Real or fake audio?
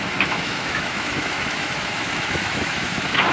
fake